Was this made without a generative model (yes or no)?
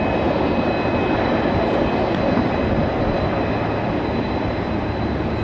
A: yes